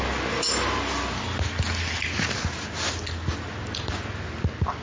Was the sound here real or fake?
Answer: real